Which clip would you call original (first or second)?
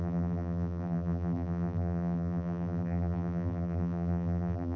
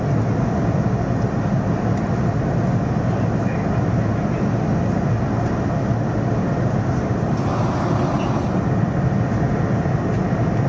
second